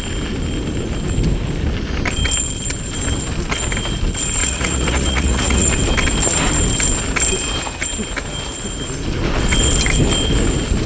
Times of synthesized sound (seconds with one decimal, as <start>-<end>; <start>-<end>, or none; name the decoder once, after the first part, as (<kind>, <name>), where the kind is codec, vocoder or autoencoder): 4.4-5.7 (vocoder, Vocos)